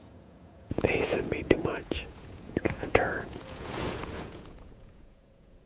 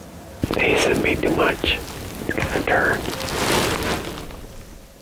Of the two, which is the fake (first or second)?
first